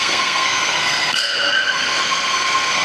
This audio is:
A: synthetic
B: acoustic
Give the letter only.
A